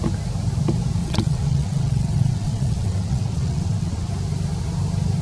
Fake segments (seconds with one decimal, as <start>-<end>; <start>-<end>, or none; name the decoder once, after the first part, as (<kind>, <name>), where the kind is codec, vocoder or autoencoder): 1.0-4.1 (vocoder, WaveNeXt)